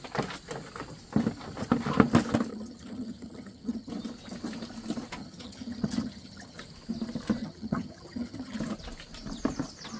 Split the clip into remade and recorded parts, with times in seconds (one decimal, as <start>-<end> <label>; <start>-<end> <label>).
0.0-2.5 recorded; 2.5-3.9 remade; 3.9-5.2 recorded; 5.2-6.6 remade; 6.6-7.4 recorded; 7.4-8.6 remade; 8.6-10.0 recorded